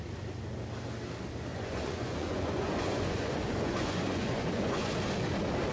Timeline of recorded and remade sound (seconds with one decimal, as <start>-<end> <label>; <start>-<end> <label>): 0.0-1.5 recorded; 1.5-4.9 remade; 4.9-5.7 recorded